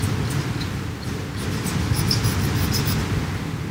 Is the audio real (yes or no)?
yes